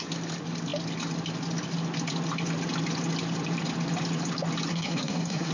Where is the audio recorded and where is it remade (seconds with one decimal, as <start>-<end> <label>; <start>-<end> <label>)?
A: 0.0-4.7 recorded; 4.7-5.5 remade